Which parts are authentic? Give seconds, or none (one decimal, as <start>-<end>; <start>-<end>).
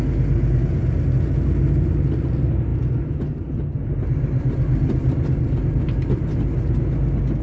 0.0-7.4